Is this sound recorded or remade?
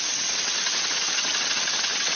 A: remade